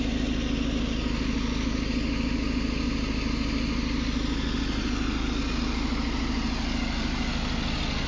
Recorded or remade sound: recorded